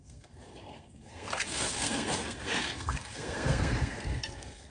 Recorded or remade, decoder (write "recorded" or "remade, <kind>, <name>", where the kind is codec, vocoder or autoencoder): remade, codec, SNAC